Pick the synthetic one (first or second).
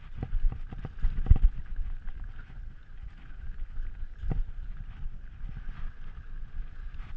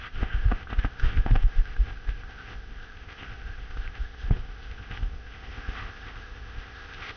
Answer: second